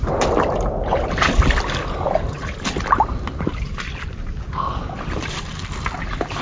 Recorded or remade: recorded